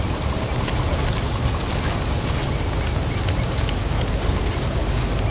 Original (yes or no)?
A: yes